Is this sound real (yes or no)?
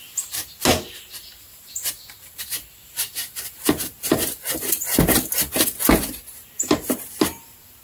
yes